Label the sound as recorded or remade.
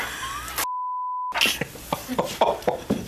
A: recorded